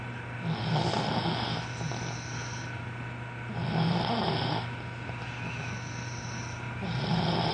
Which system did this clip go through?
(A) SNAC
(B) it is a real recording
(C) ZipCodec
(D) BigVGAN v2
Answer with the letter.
D